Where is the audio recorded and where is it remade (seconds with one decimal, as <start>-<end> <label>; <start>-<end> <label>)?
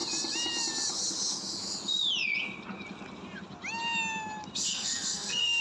0.0-4.7 recorded; 4.7-5.6 remade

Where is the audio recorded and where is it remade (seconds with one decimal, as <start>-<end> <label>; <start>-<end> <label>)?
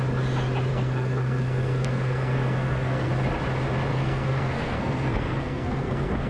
0.0-0.7 recorded; 0.7-3.1 remade; 3.1-3.9 recorded; 3.9-6.3 remade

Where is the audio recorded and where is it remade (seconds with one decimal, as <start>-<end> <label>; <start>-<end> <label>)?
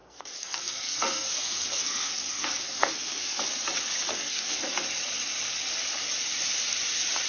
0.0-3.4 remade; 3.4-4.1 recorded; 4.1-4.6 remade; 4.6-7.3 recorded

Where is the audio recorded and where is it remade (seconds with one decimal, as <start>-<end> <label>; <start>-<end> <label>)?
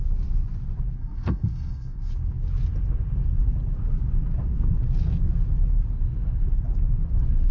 0.0-1.0 recorded; 1.0-2.1 remade; 2.1-7.5 recorded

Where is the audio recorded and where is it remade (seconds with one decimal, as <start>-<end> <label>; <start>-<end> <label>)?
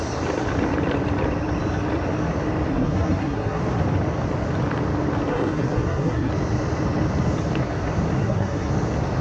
0.0-2.7 recorded; 2.7-3.6 remade; 3.6-5.3 recorded; 5.3-6.3 remade; 6.3-8.2 recorded; 8.2-8.7 remade; 8.7-9.2 recorded